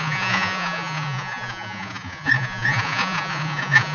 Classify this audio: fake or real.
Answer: fake